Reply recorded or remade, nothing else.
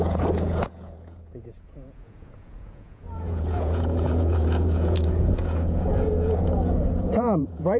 remade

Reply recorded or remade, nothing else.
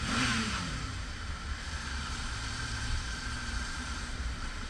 remade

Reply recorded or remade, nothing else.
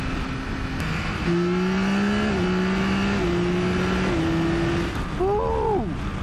recorded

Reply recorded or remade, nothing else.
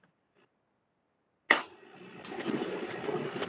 recorded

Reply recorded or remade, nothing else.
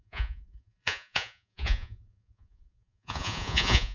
remade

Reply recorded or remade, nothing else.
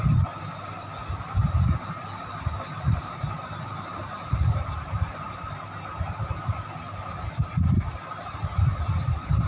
recorded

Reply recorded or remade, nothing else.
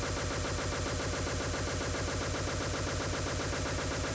recorded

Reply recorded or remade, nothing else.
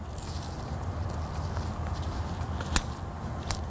recorded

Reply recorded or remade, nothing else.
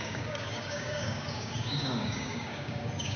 remade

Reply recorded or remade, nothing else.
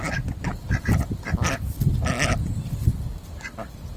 recorded